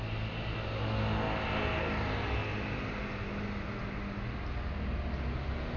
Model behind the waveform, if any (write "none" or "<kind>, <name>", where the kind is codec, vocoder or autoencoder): none